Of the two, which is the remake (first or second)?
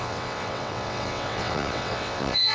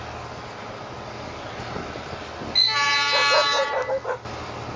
first